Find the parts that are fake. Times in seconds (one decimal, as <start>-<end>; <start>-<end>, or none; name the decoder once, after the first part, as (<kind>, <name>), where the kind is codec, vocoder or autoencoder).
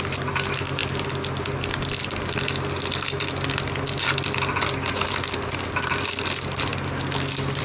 none